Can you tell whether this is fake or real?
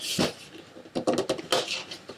real